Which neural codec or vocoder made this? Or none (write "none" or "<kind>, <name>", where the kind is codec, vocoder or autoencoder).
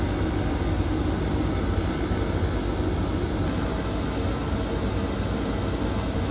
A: none